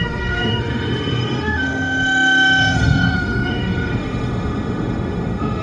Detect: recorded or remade remade